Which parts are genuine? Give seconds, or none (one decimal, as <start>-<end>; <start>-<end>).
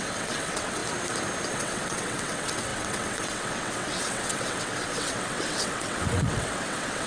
0.8-1.5